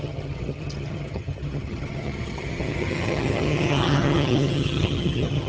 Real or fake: fake